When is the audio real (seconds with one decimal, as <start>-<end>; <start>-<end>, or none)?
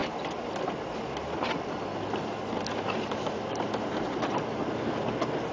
1.5-2.7; 4.4-5.5